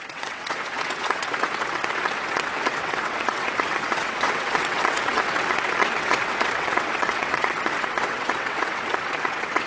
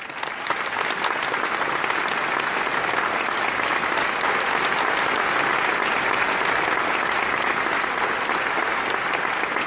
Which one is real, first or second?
second